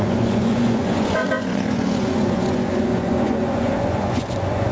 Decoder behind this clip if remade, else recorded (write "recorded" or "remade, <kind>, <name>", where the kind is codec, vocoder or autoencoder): remade, vocoder, Vocos